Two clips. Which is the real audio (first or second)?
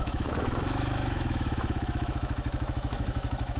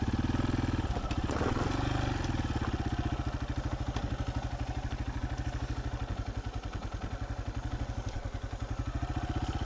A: second